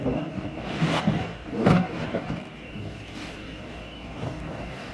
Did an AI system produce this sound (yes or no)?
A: yes